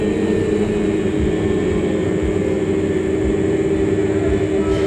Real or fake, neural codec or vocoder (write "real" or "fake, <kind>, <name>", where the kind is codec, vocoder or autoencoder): real